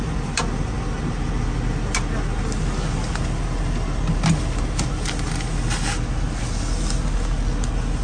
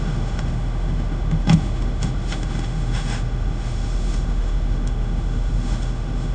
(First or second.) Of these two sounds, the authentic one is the first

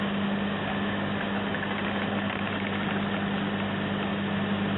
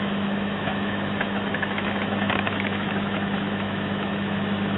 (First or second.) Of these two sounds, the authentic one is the first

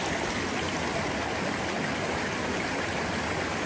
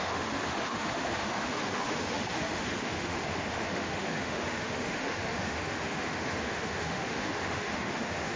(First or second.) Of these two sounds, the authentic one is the first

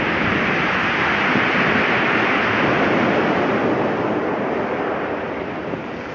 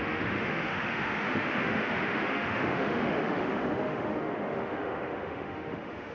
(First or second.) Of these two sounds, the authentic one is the first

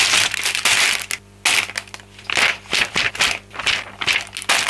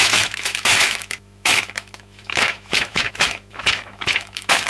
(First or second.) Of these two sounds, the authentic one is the first